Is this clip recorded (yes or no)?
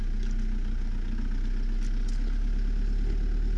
yes